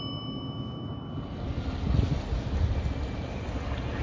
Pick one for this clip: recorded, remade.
recorded